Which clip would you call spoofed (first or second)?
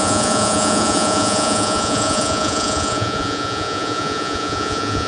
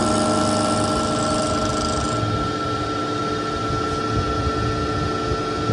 first